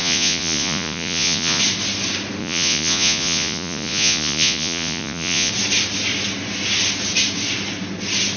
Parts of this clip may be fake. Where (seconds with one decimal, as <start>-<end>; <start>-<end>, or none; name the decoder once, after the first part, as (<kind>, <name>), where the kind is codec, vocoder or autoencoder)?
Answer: 0.0-1.6 (vocoder, Vocos); 2.4-5.5